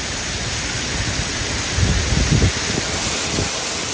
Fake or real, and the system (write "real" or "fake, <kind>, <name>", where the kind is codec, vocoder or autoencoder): real